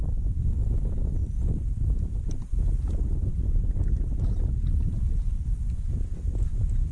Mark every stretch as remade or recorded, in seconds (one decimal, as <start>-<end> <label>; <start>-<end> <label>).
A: 0.0-1.2 recorded; 1.2-5.3 remade; 5.3-6.9 recorded